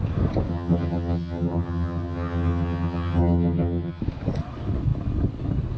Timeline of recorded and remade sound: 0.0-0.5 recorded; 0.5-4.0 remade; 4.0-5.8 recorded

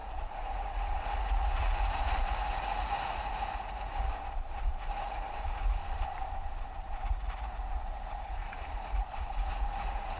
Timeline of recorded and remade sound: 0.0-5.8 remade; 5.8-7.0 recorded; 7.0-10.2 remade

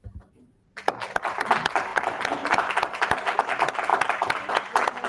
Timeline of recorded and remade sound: 0.0-5.1 recorded

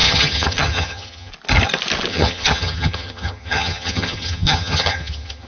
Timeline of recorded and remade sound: 0.0-1.3 remade; 1.3-2.1 recorded; 2.1-5.5 remade

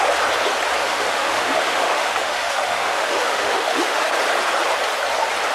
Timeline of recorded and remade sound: 0.0-0.8 recorded; 0.8-4.1 remade; 4.1-5.5 recorded

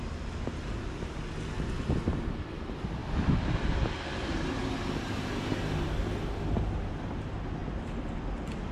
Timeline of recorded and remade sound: 0.0-8.7 recorded